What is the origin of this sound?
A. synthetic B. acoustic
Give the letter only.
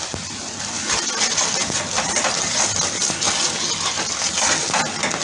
B